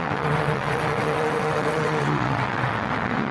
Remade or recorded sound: remade